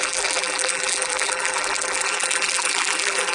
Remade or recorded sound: remade